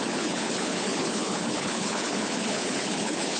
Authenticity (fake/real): fake